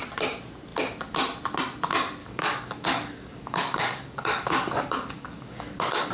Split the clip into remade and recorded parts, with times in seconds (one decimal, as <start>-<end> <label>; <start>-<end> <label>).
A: 0.0-2.2 recorded; 2.2-6.1 remade